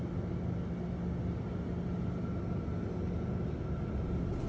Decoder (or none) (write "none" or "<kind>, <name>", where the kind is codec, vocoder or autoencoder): none